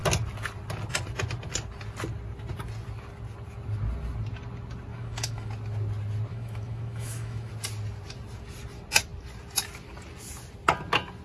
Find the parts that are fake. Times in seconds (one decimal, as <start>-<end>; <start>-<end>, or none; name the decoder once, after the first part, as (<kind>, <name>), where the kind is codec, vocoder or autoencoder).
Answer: 4.9-5.5 (autoencoder, DAC-VAE); 6.3-7.5

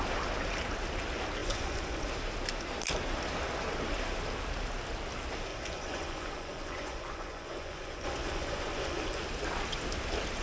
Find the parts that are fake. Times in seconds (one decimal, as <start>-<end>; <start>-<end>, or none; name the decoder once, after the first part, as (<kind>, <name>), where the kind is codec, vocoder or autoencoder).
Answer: 1.4-2.1 (vocoder, Vocos); 5.5-9.2

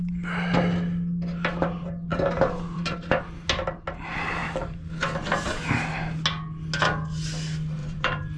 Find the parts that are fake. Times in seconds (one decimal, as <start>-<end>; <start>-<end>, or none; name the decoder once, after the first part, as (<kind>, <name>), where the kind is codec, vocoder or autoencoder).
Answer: 2.1-3.2 (vocoder, BigVGAN v2); 7.8-8.4

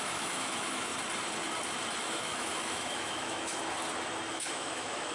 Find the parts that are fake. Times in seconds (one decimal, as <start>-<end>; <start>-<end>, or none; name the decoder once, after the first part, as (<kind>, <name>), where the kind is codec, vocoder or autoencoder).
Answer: 0.0-0.9 (autoencoder, DAC-VAE); 2.0-3.6; 4.3-5.1

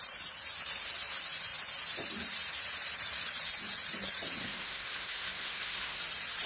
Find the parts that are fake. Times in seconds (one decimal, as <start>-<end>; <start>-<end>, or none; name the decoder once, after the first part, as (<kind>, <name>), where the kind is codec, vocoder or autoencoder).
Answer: 4.4-6.0 (codec, SNAC)

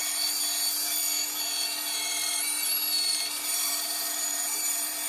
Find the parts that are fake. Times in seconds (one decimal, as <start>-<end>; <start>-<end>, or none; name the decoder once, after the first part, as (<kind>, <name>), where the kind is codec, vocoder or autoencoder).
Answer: 3.1-5.1 (vocoder, BigVGAN v2)

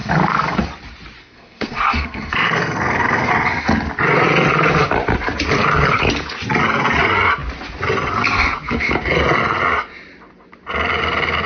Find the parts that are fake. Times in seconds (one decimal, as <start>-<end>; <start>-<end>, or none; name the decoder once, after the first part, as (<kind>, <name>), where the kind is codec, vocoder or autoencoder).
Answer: 0.0-0.6 (codec, SNAC); 1.2-3.3

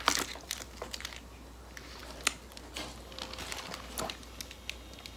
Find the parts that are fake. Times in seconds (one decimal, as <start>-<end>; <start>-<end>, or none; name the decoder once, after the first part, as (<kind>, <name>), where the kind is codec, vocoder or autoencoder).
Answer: none